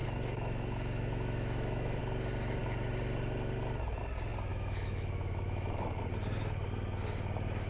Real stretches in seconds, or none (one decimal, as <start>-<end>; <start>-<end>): 2.0-4.5; 6.0-7.7